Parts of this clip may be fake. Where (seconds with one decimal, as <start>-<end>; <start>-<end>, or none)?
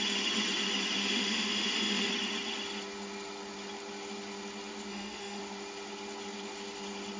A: 1.0-2.1; 4.9-5.4